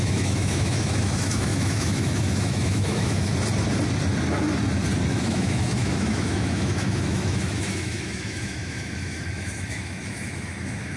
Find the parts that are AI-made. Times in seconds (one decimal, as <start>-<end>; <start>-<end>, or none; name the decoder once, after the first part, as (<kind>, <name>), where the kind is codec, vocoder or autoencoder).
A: 0.0-3.3 (autoencoder, DAC-VAE); 5.1-11.0